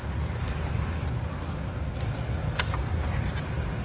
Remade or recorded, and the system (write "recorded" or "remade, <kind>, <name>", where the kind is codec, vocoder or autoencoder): recorded